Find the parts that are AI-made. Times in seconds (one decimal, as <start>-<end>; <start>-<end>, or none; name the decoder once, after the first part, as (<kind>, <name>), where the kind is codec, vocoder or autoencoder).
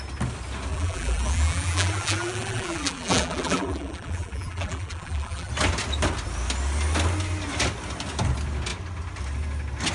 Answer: 0.7-5.5 (vocoder, BigVGAN v2)